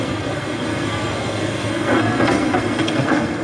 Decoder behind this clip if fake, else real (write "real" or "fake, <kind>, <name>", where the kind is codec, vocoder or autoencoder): fake, codec, SNAC